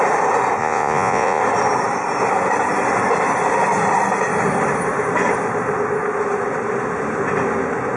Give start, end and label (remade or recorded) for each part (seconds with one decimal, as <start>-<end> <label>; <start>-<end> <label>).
0.0-0.6 recorded; 0.6-1.4 remade; 1.4-8.0 recorded